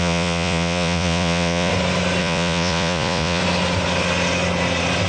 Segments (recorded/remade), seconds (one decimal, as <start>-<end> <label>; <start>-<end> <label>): 0.0-1.7 remade; 1.7-2.2 recorded; 2.2-3.4 remade; 3.4-5.1 recorded